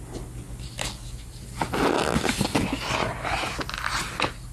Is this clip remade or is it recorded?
recorded